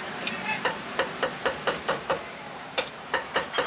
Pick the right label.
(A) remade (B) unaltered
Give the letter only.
A